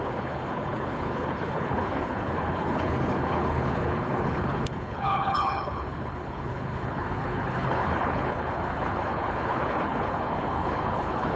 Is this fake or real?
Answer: fake